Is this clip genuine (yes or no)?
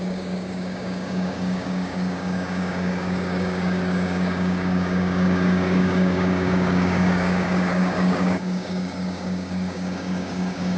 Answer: no